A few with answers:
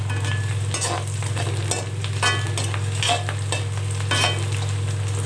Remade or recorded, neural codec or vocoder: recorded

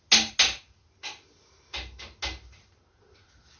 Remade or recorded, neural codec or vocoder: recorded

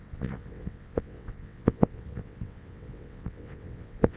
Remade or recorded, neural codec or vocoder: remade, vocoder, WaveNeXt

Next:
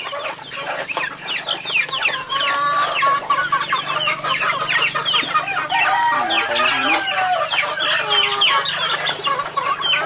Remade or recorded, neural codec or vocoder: recorded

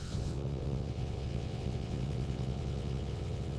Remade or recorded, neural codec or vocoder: remade, vocoder, WaveNeXt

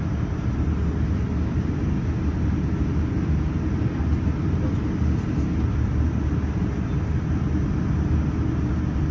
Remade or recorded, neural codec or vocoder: recorded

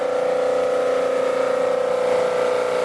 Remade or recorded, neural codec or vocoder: recorded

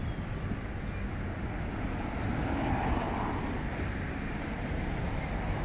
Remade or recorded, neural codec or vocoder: recorded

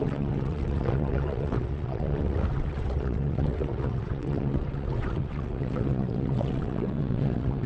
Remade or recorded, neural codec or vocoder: remade, vocoder, WaveNeXt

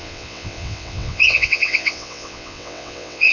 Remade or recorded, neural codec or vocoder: remade, vocoder, WaveNeXt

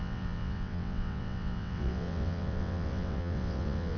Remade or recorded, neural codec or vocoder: remade, vocoder, WaveNeXt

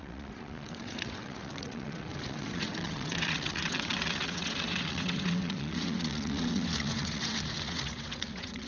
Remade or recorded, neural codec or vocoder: remade, vocoder, WaveNeXt